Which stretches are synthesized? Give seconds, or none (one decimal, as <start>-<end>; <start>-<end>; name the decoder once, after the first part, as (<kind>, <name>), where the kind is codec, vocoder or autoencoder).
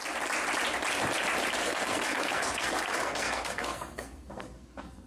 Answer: 1.6-5.1 (codec, SNAC)